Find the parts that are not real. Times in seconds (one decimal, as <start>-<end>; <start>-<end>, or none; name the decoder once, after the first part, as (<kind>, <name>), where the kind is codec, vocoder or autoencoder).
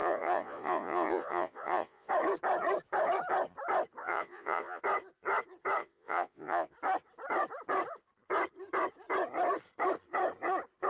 0.0-2.1 (vocoder, Vocos); 4.0-4.8; 5.8-6.7